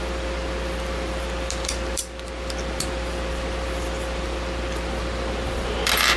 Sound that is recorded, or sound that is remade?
remade